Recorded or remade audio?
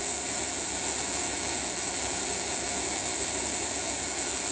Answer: remade